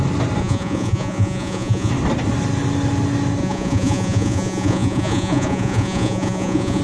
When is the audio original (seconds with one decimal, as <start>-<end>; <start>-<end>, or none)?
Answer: 0.0-0.4; 1.9-3.4

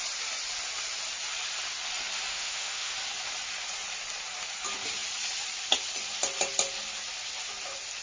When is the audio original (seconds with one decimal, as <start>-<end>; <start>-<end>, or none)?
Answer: 0.0-2.3; 2.9-8.0

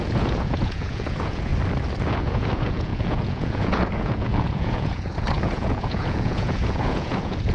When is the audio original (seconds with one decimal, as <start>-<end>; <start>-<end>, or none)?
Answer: 1.5-2.1

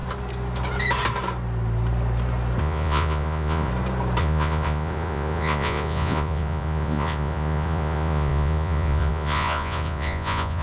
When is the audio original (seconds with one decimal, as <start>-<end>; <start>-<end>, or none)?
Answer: 0.0-2.6; 3.7-4.2

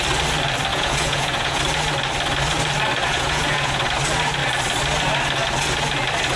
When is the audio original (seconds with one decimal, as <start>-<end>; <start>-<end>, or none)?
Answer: 0.0-0.7; 1.6-3.1; 3.8-6.4

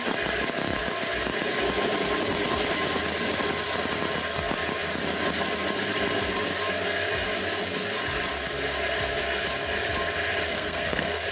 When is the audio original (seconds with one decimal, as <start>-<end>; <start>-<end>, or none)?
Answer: 0.0-10.5

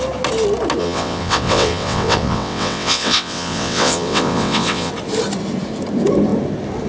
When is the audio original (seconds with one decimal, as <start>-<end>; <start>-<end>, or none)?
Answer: 0.0-0.8; 4.9-6.9

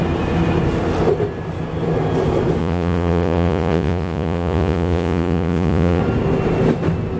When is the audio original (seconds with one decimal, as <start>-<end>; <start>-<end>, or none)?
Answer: 0.0-2.6; 6.0-7.2